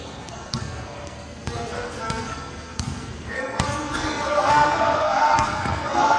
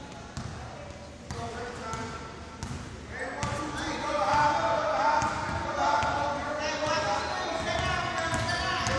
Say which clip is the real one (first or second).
second